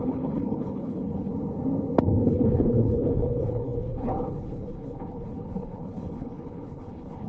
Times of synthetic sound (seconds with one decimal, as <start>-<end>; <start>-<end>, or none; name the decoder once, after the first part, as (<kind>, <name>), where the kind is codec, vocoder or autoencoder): 0.0-1.3 (codec, HILCodec); 2.2-7.3